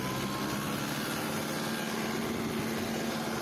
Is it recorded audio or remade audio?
recorded